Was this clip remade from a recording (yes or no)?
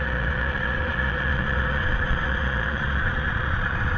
yes